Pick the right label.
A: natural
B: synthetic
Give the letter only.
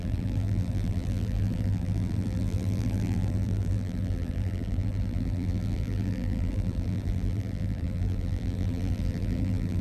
B